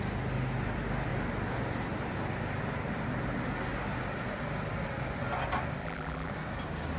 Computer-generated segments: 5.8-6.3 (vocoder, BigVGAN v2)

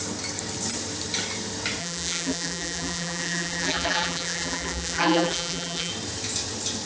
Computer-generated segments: 1.8-5.9 (vocoder, BigVGAN v2)